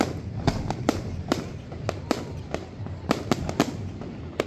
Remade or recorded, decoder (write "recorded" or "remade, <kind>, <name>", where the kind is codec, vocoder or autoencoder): recorded